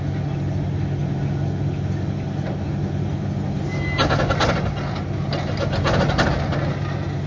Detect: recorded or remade recorded